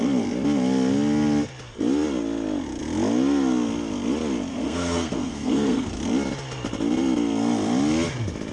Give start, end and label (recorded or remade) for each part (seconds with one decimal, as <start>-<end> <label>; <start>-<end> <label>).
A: 0.0-4.5 recorded; 4.5-5.9 remade; 5.9-8.5 recorded